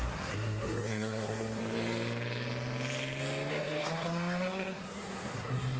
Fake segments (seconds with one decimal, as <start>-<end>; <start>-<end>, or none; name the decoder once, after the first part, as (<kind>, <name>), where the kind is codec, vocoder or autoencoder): 0.0-1.6 (codec, SNAC); 3.5-5.8